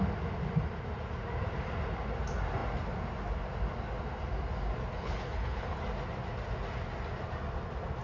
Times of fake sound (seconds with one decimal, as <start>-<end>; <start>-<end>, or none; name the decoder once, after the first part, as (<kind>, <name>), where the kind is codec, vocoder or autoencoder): 4.9-5.8 (codec, HILCodec)